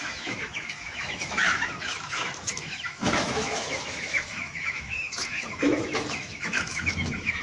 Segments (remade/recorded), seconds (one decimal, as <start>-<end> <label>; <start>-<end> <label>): 0.0-7.4 remade